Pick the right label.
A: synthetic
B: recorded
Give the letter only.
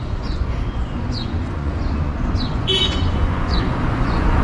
A